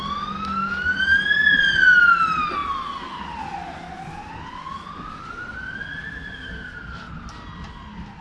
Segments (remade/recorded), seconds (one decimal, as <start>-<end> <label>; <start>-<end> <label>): 0.0-8.2 recorded